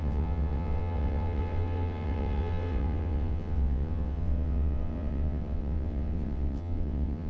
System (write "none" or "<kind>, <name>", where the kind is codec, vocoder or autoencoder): vocoder, WaveNeXt